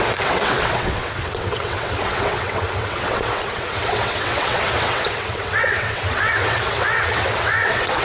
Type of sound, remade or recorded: remade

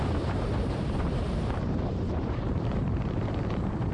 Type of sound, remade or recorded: remade